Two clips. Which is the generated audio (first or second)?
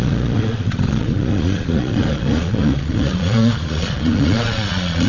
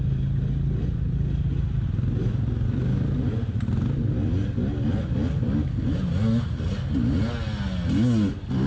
first